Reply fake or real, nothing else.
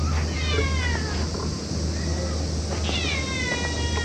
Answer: real